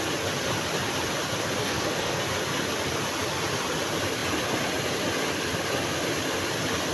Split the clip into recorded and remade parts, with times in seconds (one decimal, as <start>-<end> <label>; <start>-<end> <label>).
0.0-1.6 recorded; 1.6-2.2 remade; 2.2-6.9 recorded